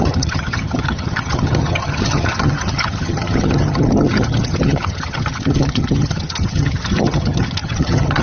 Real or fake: fake